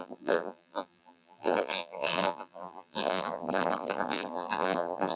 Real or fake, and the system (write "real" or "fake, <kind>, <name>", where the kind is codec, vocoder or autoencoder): fake, vocoder, BigVGAN v2